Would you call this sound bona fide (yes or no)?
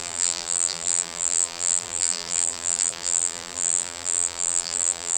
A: no